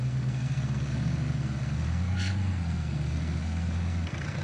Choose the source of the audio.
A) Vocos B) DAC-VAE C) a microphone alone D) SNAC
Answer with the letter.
D